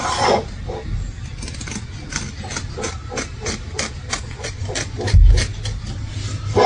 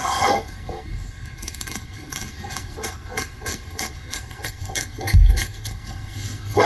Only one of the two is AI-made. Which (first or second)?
second